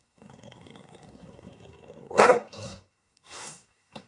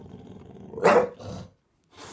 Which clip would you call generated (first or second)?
first